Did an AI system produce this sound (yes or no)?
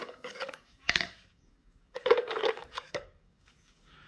yes